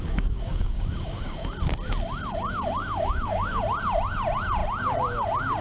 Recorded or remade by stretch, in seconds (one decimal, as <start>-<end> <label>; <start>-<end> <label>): 0.0-1.5 remade; 1.5-2.8 recorded; 2.8-3.6 remade; 3.6-5.6 recorded